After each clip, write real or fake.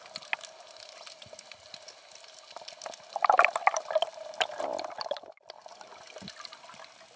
real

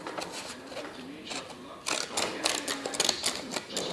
real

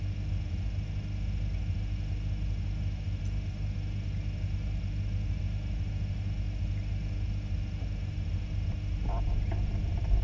real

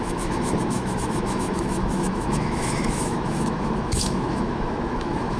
fake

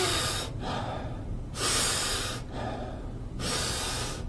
real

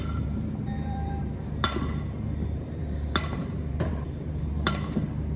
fake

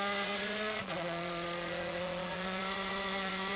fake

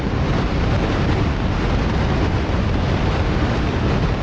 real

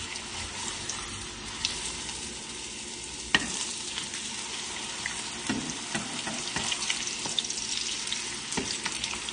real